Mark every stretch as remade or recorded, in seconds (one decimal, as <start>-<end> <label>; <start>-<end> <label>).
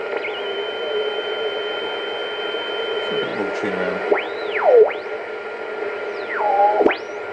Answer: 0.0-7.3 recorded